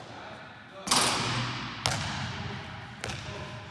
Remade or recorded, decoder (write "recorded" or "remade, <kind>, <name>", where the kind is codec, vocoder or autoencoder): recorded